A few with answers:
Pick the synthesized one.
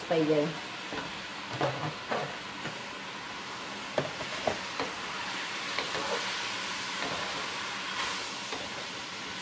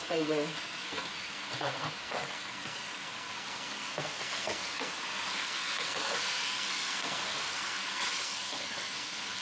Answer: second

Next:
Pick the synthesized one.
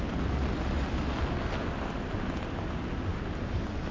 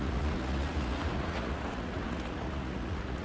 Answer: second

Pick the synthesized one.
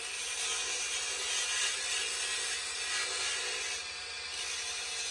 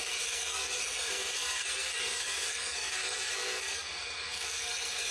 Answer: second